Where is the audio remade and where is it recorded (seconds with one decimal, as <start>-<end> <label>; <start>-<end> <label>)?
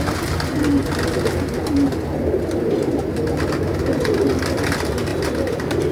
0.0-5.9 recorded